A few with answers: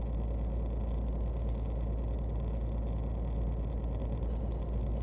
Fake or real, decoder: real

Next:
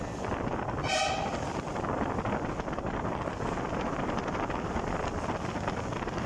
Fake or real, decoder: real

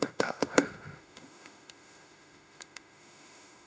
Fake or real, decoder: fake, autoencoder, DAC-VAE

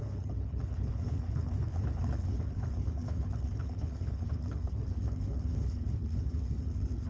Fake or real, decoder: fake, codec, HILCodec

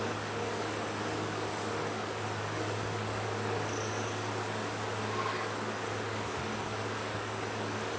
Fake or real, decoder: fake, codec, DAC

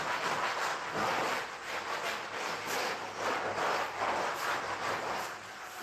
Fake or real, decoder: real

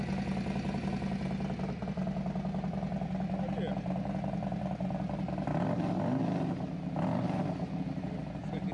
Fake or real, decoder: real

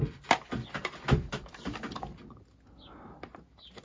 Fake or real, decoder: real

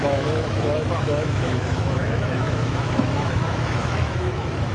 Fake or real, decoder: fake, autoencoder, DAC-VAE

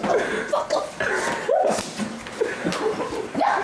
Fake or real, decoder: real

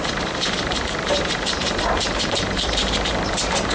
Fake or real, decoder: fake, vocoder, BigVGAN v2